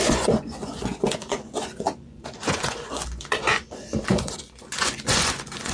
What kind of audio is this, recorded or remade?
remade